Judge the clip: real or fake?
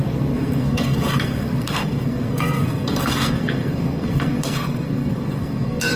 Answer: fake